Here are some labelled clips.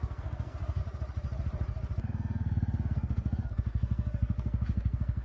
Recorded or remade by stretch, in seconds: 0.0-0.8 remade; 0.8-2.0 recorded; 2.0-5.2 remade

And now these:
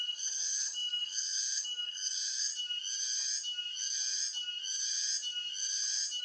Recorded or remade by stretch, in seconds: 0.0-2.5 remade; 2.5-6.2 recorded

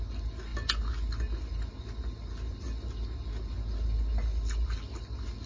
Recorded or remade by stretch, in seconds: 0.0-5.5 recorded

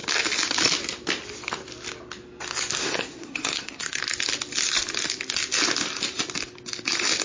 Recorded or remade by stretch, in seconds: 0.0-2.8 recorded; 2.8-4.0 remade; 4.0-7.2 recorded

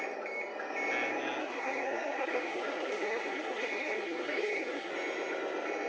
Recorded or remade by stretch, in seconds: 0.0-1.4 recorded; 1.4-4.9 remade; 4.9-5.9 recorded